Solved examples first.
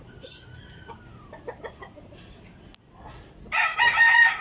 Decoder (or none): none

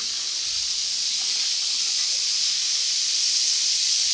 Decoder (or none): none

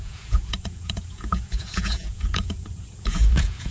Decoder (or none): vocoder, Vocos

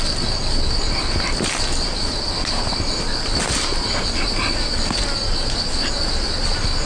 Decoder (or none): none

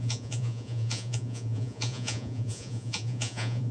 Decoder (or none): vocoder, Vocos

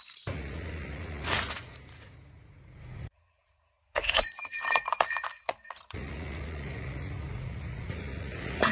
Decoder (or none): vocoder, Vocos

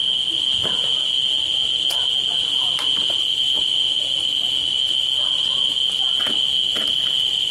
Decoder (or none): none